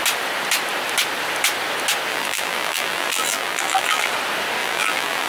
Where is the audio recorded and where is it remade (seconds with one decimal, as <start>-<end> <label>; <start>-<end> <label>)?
0.0-2.1 recorded; 2.1-4.1 remade; 4.1-4.6 recorded; 4.6-5.3 remade